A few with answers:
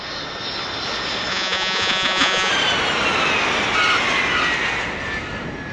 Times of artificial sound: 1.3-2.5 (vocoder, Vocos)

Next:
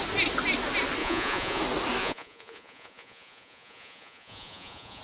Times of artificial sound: 1.0-1.6 (vocoder, Vocos); 2.0-5.0

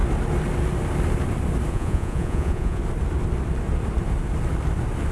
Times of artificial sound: 1.7-2.8 (vocoder, Vocos)

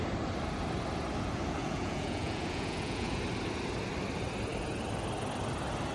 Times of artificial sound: 1.6-3.2 (vocoder, Vocos)

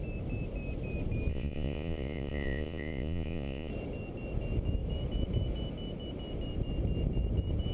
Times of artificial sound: 1.3-3.7 (vocoder, Vocos)

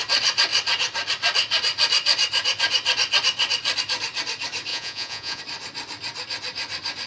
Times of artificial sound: 4.7-5.4 (vocoder, Vocos)